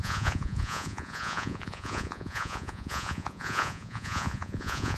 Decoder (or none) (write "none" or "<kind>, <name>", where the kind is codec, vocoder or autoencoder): vocoder, Vocos